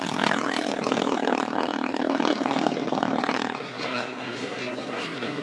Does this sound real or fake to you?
fake